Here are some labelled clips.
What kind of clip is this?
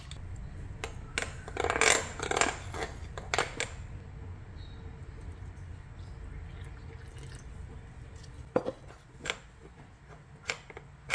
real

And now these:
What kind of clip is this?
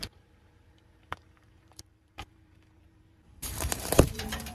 fake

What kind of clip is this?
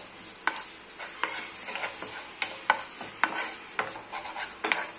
real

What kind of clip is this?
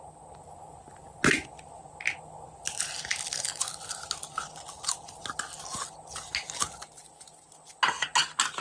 real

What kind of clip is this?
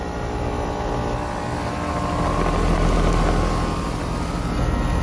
real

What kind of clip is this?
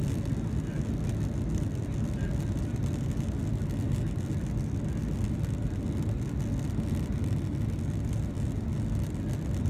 real